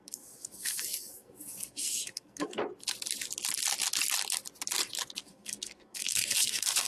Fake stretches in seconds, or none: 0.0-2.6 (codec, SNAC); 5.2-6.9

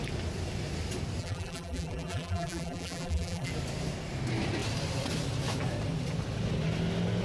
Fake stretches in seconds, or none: 1.2-3.5 (vocoder, BigVGAN v2)

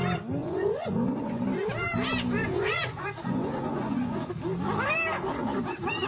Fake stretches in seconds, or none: 0.4-1.4 (vocoder, Vocos); 2.4-4.3

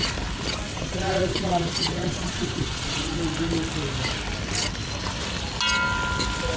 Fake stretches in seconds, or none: 0.7-3.2 (vocoder, Vocos)